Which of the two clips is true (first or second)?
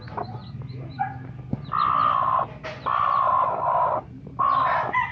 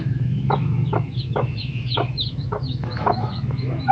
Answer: first